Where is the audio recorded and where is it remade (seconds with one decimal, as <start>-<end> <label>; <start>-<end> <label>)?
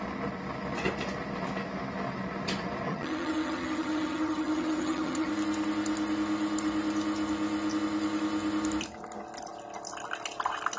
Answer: 0.0-2.9 recorded; 2.9-5.3 remade; 5.3-10.8 recorded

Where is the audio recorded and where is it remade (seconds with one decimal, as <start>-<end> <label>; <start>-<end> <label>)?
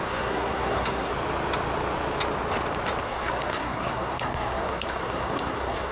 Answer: 0.0-1.1 remade; 1.1-3.0 recorded; 3.0-5.9 remade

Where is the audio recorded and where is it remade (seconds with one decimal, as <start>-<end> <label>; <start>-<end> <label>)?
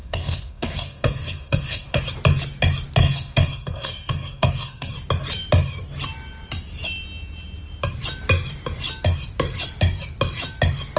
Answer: 0.0-2.0 remade; 2.0-3.0 recorded; 3.0-4.9 remade; 4.9-11.0 recorded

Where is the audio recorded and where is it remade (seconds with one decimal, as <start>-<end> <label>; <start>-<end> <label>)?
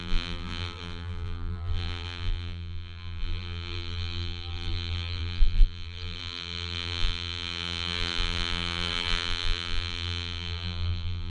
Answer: 0.0-11.3 remade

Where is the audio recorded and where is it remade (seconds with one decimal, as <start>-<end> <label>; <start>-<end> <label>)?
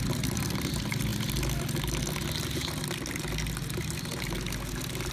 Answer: 0.0-5.1 recorded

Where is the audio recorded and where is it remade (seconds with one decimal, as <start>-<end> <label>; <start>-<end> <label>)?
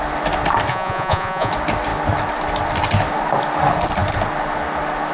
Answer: 0.0-0.7 recorded; 0.7-1.5 remade; 1.5-5.1 recorded